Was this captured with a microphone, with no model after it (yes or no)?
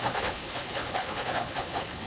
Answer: no